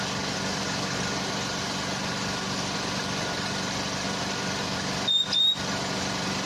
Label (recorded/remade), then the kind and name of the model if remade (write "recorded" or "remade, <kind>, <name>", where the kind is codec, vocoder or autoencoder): recorded